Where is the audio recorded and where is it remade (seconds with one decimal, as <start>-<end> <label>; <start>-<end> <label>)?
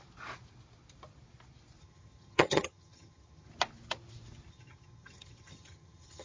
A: 0.0-1.8 recorded; 1.8-3.5 remade; 3.5-4.5 recorded; 4.5-6.2 remade